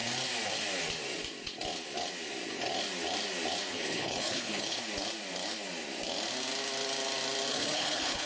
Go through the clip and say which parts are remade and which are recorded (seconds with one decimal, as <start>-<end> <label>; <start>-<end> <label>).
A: 0.0-3.7 recorded; 3.7-4.8 remade; 4.8-7.5 recorded; 7.5-8.3 remade